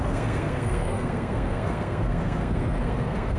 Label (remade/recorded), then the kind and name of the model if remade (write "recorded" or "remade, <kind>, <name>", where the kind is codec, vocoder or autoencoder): remade, codec, SNAC